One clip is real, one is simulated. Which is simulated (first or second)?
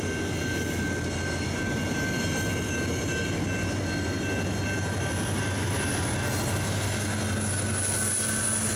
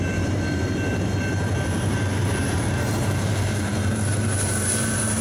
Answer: second